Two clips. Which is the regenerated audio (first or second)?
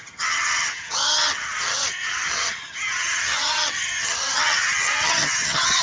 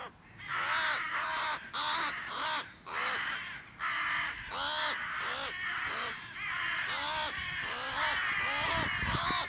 first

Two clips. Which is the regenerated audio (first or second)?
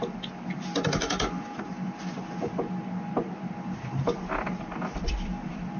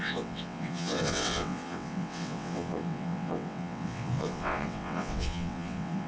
second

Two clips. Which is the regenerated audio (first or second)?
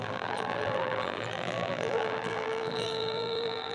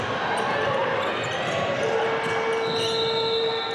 first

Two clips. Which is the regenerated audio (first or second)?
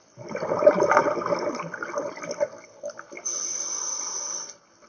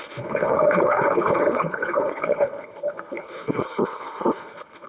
second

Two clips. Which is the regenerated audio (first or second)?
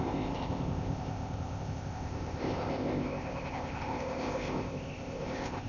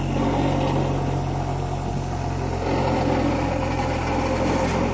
first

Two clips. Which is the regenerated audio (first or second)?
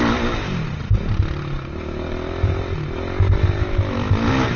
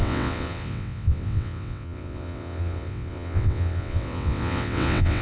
second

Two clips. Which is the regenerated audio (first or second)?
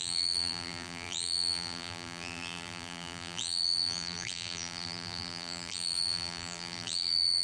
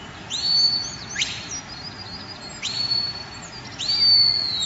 first